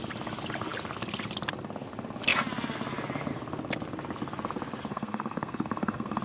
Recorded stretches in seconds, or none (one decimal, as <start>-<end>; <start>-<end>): 0.0-4.9